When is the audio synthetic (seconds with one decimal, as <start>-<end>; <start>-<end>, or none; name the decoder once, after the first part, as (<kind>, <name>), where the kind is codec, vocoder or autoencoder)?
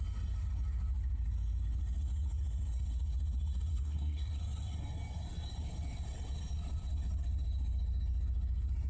3.7-4.4 (codec, SNAC)